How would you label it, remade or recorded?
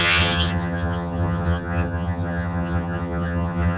remade